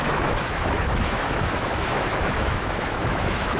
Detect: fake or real fake